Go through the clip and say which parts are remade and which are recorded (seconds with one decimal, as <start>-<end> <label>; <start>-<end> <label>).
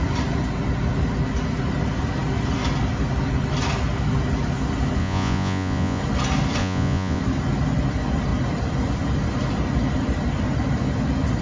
0.0-5.0 recorded; 5.0-6.0 remade; 6.0-6.6 recorded; 6.6-7.2 remade; 7.2-11.4 recorded